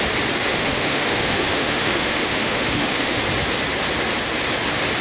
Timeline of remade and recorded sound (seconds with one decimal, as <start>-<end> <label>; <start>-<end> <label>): 0.0-0.5 recorded; 0.5-3.2 remade; 3.2-5.0 recorded